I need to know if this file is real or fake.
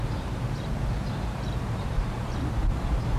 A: fake